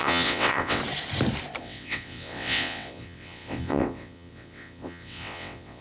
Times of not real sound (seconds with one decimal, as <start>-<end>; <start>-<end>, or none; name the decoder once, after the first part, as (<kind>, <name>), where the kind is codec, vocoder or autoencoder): 0.0-0.8 (vocoder, WaveNeXt); 1.6-5.8